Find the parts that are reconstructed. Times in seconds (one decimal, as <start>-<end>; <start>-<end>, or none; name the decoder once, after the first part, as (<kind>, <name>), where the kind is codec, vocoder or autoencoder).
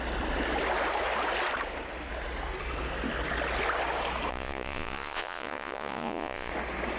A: 4.3-6.5 (vocoder, Vocos)